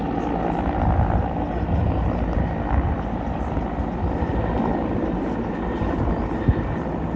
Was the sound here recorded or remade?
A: recorded